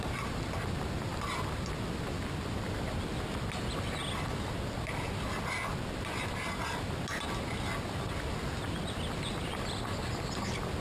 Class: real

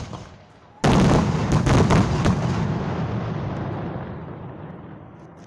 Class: real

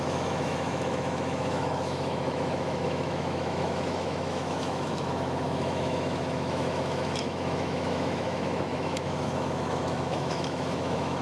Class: fake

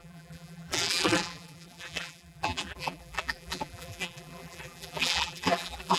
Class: fake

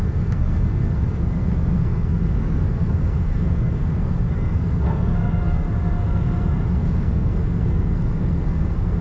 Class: fake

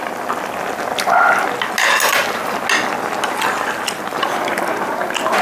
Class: real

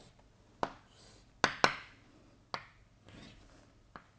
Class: real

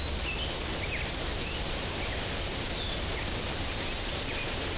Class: real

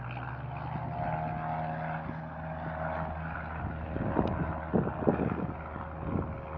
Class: real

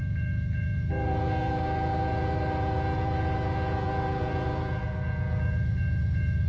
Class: fake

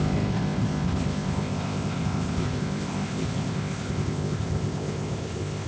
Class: fake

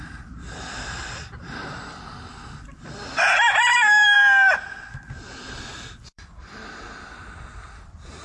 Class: fake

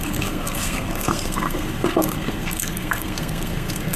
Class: fake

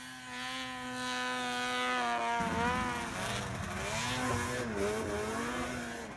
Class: real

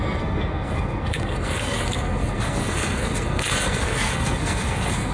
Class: fake